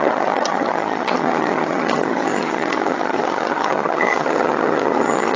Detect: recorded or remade remade